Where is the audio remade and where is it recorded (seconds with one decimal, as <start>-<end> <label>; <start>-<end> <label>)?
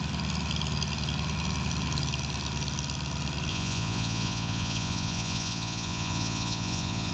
0.0-3.5 recorded; 3.5-7.1 remade